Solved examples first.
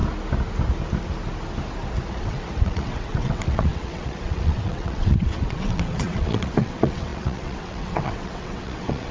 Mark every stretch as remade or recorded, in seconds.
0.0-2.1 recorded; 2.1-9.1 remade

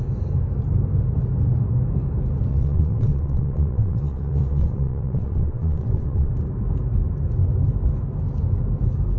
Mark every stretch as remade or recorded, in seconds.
0.0-2.5 recorded; 2.5-6.3 remade; 6.3-9.2 recorded

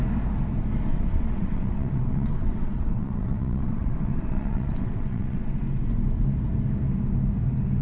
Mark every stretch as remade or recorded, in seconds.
0.0-0.9 recorded; 0.9-5.6 remade; 5.6-7.8 recorded

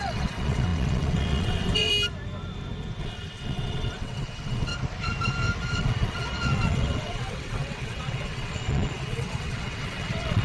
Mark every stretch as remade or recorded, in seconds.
0.0-1.9 remade; 1.9-3.0 recorded; 3.0-4.7 remade; 4.7-5.7 recorded; 5.7-10.4 remade

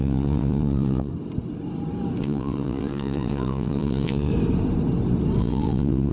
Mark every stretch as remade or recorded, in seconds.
0.0-1.1 remade; 1.1-2.2 recorded; 2.2-4.3 remade; 4.3-5.4 recorded; 5.4-6.1 remade